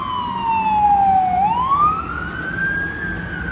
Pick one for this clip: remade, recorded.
recorded